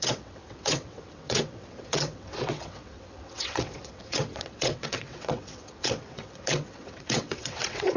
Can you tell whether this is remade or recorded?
remade